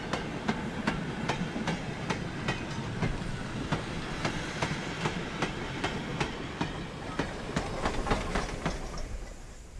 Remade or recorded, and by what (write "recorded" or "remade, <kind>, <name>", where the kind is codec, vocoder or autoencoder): recorded